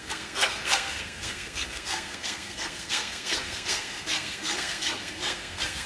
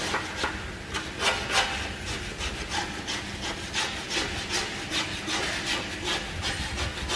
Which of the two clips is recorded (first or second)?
second